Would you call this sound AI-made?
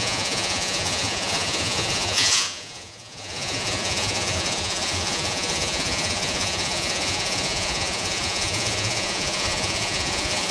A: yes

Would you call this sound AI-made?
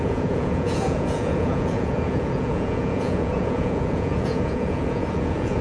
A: yes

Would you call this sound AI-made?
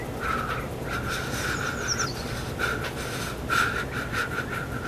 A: no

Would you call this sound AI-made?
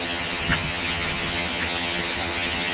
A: yes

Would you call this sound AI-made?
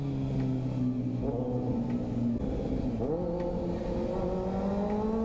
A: no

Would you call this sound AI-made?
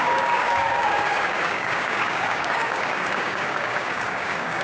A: yes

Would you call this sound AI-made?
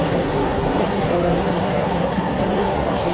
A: yes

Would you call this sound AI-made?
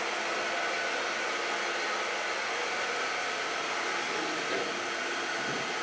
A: no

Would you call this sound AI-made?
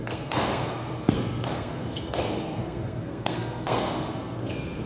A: yes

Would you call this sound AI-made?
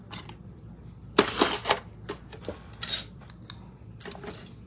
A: no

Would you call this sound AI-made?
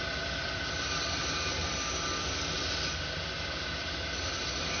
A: yes